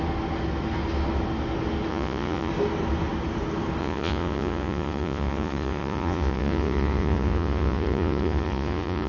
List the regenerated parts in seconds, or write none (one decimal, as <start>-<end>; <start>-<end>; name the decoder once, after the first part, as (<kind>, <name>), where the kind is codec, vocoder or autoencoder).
1.9-2.5 (vocoder, Vocos); 3.8-9.1